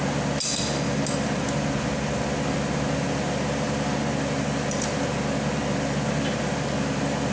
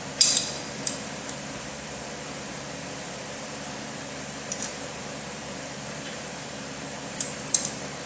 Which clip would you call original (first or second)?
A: first